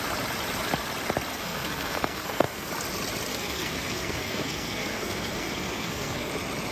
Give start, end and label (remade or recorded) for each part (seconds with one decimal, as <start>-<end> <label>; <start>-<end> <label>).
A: 0.0-1.3 recorded; 1.3-2.7 remade; 2.7-3.3 recorded; 3.3-6.3 remade; 6.3-6.7 recorded